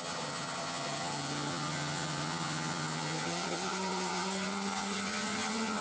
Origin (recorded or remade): remade